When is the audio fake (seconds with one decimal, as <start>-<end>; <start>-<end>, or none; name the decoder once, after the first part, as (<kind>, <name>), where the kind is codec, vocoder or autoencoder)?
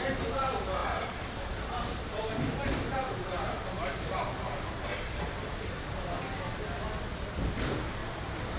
0.8-4.4 (vocoder, BigVGAN v2); 4.9-5.9; 8.0-8.6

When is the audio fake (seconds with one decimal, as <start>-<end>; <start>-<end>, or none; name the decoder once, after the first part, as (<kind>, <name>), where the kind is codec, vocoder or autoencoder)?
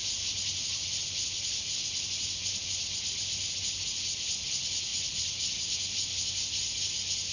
0.0-2.0 (vocoder, BigVGAN v2)